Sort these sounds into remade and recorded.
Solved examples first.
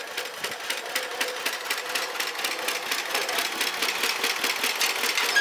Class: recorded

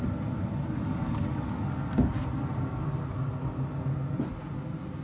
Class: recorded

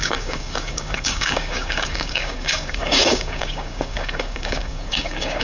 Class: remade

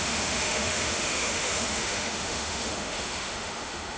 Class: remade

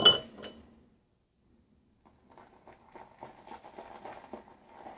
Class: recorded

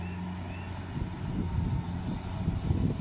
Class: recorded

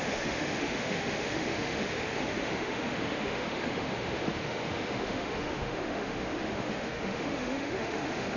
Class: remade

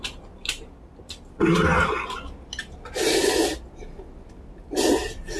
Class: recorded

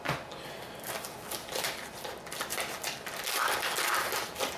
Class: recorded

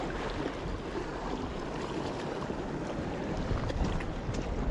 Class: recorded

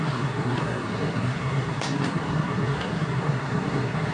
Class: remade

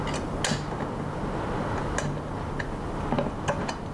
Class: recorded